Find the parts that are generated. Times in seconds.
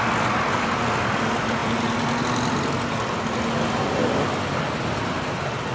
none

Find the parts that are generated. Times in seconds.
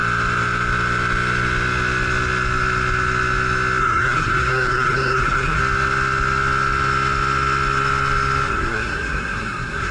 3.8-5.6 (codec, SNAC); 8.5-9.9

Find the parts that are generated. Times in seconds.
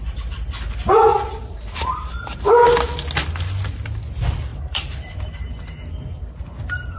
1.1-2.4 (vocoder, BigVGAN v2); 4.5-5.5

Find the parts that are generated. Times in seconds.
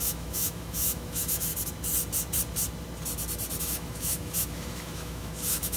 0.0-1.5 (autoencoder, DAC-VAE); 3.6-5.8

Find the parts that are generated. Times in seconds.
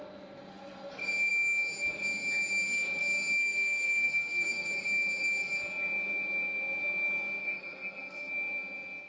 3.4-4.7 (codec, SNAC); 7.4-8.3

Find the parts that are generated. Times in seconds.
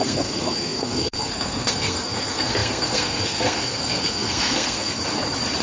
0.0-4.9 (codec, SNAC)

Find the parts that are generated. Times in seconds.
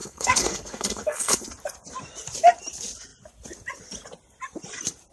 0.0-1.5 (codec, SNAC)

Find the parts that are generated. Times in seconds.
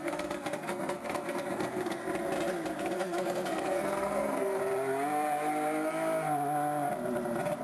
0.0-2.0 (codec, SNAC); 2.8-4.6